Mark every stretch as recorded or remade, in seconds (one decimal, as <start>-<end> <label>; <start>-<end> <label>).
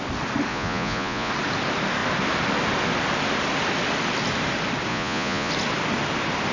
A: 0.0-0.5 recorded; 0.5-1.3 remade; 1.3-4.9 recorded; 4.9-5.5 remade; 5.5-6.5 recorded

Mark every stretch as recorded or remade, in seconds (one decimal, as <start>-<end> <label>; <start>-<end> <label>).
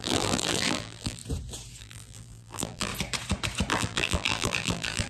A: 0.0-1.2 remade; 1.2-1.8 recorded; 1.8-2.9 remade; 2.9-3.7 recorded; 3.7-5.1 remade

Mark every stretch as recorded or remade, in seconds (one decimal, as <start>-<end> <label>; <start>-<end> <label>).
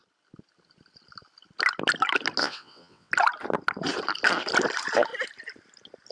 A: 0.0-2.4 recorded; 2.4-3.1 remade; 3.1-6.1 recorded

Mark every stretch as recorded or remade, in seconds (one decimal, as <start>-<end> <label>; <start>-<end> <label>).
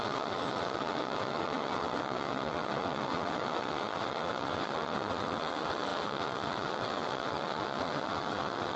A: 0.0-8.8 remade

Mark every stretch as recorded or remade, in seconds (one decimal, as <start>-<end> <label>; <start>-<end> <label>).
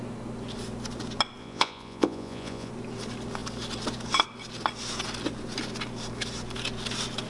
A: 0.0-1.4 recorded; 1.4-2.7 remade; 2.7-7.3 recorded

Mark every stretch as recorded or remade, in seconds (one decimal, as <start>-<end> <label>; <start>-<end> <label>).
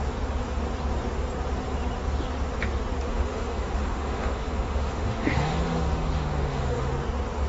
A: 0.0-3.1 recorded; 3.1-6.9 remade; 6.9-7.5 recorded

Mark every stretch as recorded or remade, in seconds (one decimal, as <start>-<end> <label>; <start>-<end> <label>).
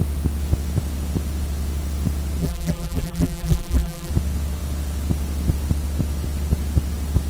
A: 0.0-2.4 recorded; 2.4-4.1 remade; 4.1-7.3 recorded